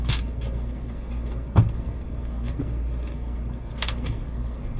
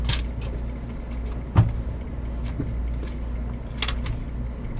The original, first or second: second